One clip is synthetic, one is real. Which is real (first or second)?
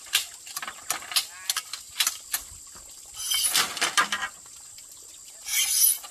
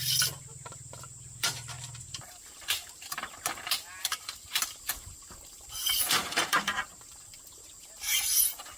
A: first